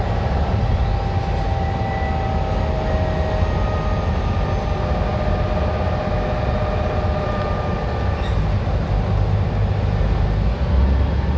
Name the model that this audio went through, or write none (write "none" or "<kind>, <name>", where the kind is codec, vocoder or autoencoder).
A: none